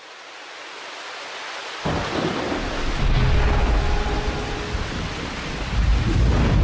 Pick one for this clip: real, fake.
real